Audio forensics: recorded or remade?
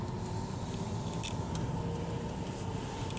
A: recorded